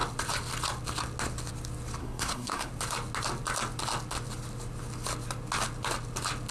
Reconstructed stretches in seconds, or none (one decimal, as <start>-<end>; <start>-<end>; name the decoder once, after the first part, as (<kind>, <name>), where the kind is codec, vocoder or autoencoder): 2.0-2.7 (codec, SNAC)